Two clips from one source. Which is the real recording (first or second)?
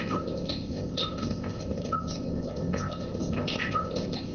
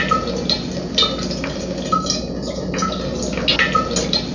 second